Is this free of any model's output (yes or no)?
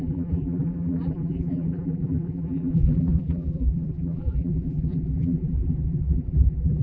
no